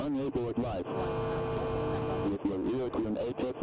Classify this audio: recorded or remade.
recorded